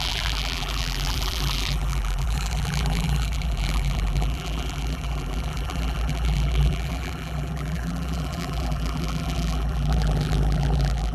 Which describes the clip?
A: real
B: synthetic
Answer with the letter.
B